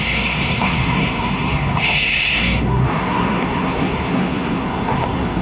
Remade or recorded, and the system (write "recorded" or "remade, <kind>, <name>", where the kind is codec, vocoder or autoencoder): remade, codec, SNAC